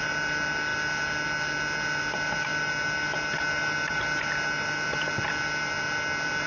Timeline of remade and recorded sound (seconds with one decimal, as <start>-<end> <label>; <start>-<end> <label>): 0.0-6.5 recorded